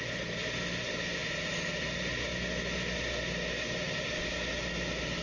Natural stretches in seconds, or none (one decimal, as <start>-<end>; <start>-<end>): 0.0-5.2